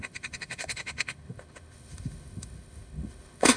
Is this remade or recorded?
remade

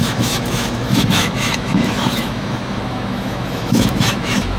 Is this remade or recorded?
remade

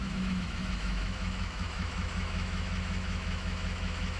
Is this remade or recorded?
remade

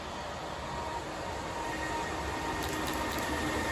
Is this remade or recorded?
recorded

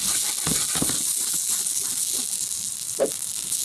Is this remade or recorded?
recorded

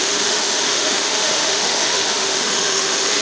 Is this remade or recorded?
remade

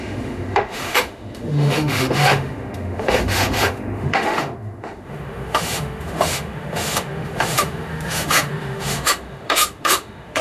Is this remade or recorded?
remade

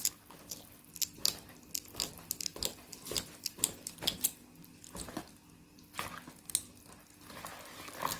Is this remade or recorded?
recorded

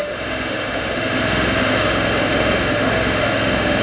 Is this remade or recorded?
remade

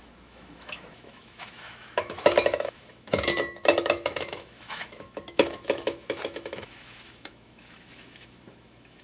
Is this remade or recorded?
remade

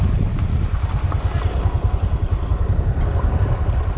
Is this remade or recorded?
recorded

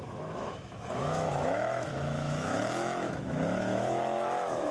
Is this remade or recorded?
remade